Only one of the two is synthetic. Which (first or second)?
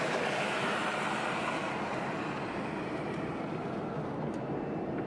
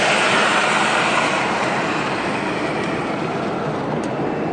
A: second